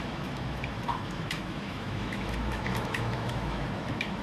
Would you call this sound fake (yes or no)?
yes